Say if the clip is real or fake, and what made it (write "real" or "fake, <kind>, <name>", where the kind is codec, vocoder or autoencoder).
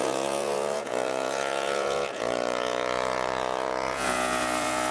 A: fake, vocoder, Vocos